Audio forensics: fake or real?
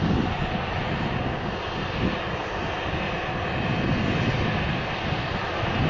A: real